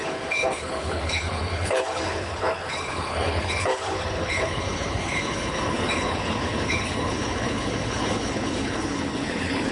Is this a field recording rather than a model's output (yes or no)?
no